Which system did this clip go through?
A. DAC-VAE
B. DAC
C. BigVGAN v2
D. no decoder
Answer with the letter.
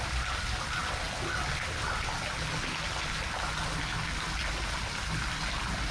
D